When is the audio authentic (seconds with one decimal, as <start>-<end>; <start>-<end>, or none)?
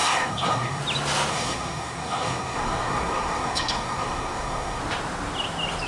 0.8-1.3; 4.8-5.9